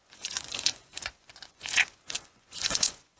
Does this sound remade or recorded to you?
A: remade